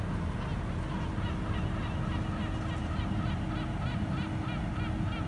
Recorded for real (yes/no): yes